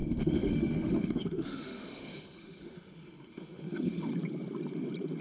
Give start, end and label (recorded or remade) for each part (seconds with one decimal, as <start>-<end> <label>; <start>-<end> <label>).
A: 0.0-4.1 remade; 4.1-5.2 recorded